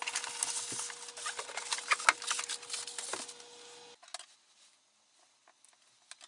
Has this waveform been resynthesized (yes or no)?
no